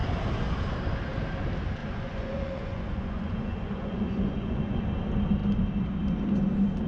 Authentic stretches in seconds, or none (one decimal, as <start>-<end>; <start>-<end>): 0.0-1.8; 4.8-6.9